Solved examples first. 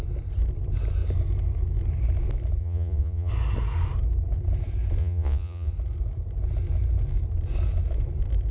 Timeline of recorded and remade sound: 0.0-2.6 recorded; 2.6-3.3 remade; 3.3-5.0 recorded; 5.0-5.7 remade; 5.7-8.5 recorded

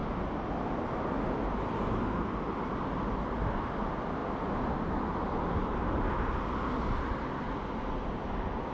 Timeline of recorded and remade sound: 0.0-8.7 recorded

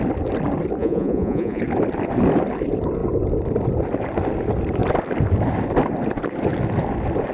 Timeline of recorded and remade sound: 0.0-0.8 recorded; 0.8-1.6 remade; 1.6-7.3 recorded

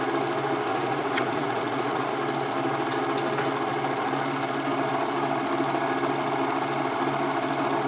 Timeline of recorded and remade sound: 0.0-0.7 recorded; 0.7-2.1 remade; 2.1-7.9 recorded

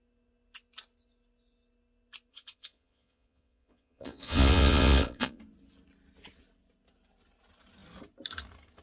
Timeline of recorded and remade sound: 0.0-2.3 recorded; 2.3-5.4 remade; 5.4-8.8 recorded

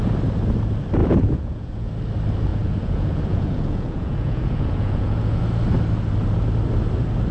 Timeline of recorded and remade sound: 0.0-1.0 recorded; 1.0-1.9 remade; 1.9-2.5 recorded; 2.5-5.4 remade; 5.4-7.3 recorded

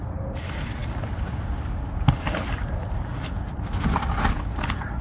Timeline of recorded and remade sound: 0.0-5.0 recorded

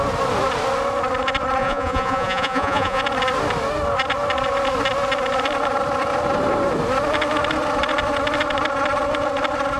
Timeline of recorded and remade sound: 0.0-1.6 recorded; 1.6-3.0 remade; 3.0-9.8 recorded